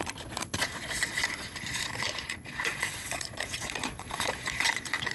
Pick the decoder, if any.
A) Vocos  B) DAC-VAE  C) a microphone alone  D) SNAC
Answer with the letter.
A